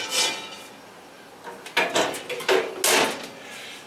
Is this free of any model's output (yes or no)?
yes